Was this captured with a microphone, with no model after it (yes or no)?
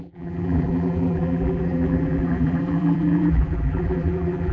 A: no